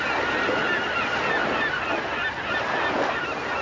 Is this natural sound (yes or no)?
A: yes